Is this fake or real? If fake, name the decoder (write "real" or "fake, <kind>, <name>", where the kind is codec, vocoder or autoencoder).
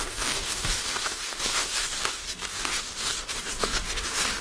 fake, codec, DAC